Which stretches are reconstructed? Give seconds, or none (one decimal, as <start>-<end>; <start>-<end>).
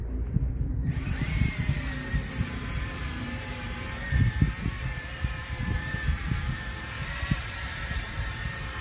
0.0-8.8